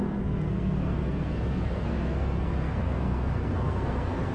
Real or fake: fake